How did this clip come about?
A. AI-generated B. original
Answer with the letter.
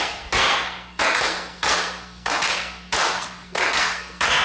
A